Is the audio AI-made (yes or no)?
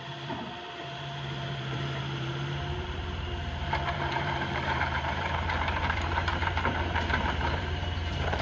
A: yes